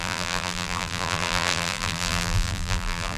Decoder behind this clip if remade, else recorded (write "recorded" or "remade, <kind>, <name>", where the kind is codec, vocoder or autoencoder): remade, vocoder, BigVGAN v2